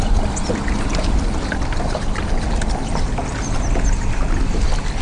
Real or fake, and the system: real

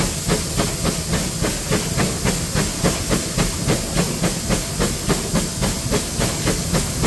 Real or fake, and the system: real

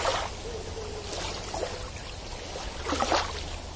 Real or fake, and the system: real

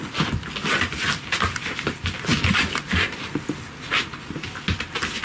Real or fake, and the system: real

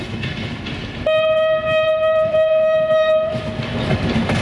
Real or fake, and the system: real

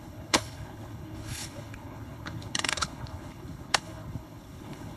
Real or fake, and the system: fake, codec, HILCodec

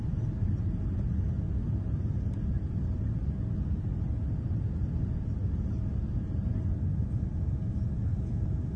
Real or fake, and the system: real